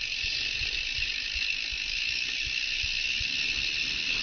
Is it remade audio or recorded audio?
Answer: recorded